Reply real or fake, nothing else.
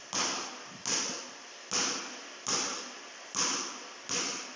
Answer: real